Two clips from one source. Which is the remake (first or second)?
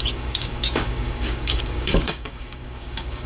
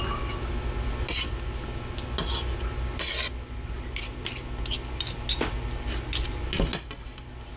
first